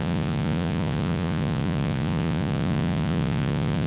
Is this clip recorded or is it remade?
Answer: remade